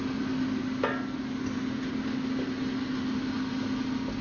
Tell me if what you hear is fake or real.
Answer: real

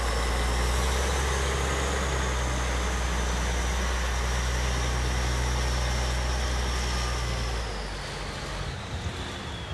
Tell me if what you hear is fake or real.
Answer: real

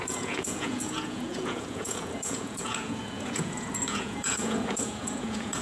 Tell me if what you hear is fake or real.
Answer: fake